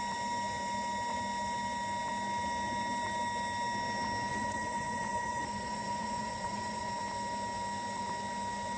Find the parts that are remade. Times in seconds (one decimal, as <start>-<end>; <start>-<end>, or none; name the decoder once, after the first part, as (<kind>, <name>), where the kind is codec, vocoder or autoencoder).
4.3-6.9 (vocoder, Vocos)